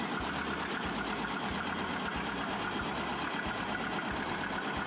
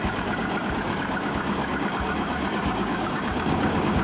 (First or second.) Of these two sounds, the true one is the first